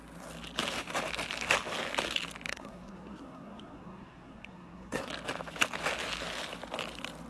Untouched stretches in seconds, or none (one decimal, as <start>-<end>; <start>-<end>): 0.0-2.5; 5.1-7.3